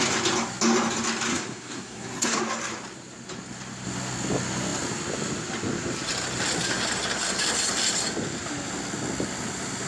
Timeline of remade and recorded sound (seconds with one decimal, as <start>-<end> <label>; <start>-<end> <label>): 0.0-1.3 recorded; 1.3-2.4 remade; 2.4-9.9 recorded